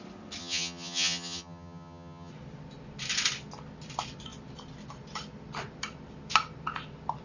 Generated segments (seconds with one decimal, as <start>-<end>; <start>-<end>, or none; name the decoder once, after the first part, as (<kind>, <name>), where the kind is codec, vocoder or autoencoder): 0.4-2.3 (vocoder, HiFi-GAN)